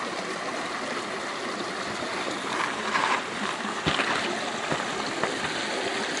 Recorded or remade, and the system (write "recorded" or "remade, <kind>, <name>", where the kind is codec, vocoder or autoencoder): recorded